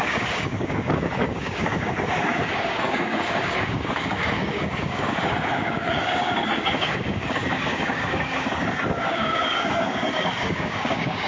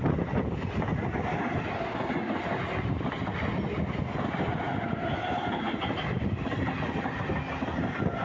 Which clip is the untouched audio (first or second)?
second